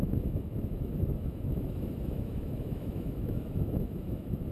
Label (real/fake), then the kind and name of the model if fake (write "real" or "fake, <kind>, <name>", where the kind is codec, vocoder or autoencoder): fake, autoencoder, DAC-VAE